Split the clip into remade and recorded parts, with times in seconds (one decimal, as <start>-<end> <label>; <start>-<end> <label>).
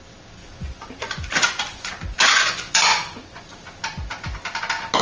0.0-0.4 recorded; 0.4-3.4 remade; 3.4-5.0 recorded